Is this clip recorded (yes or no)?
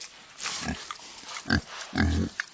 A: yes